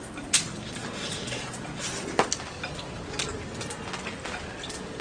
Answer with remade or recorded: recorded